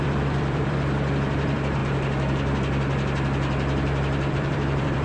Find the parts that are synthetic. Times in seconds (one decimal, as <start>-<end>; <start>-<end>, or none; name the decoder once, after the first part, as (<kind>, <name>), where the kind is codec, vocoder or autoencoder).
0.0-1.8 (vocoder, BigVGAN v2); 4.3-5.0